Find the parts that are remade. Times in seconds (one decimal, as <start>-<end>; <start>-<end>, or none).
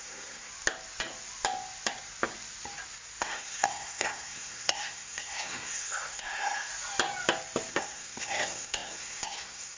0.0-0.5; 3.2-6.7; 7.7-9.8